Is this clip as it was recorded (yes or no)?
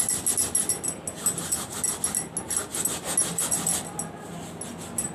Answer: yes